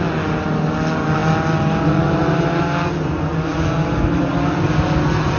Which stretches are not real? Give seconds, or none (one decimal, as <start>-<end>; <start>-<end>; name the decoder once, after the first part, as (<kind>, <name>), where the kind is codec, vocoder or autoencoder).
none